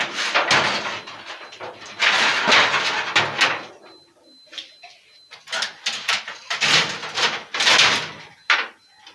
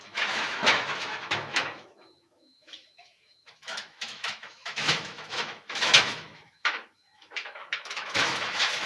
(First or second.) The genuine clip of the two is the first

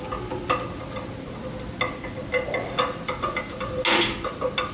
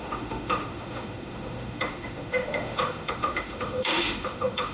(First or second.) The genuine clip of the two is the first